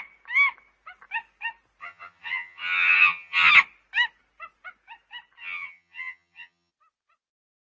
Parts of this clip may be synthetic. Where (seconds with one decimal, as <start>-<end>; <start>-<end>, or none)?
1.8-3.5; 5.4-6.7